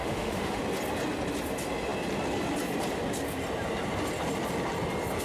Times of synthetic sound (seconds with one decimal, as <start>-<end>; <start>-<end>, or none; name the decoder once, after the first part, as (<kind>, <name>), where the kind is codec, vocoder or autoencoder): 0.0-0.6 (autoencoder, DAC-VAE)